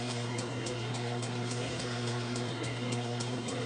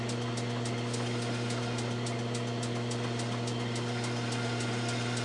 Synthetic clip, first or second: first